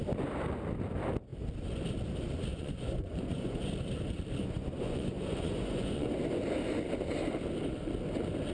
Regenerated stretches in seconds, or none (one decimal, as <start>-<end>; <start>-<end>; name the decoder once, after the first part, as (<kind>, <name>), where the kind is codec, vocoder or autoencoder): 2.5-3.7 (vocoder, Vocos); 4.4-6.1